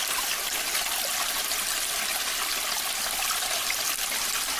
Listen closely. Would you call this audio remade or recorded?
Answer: recorded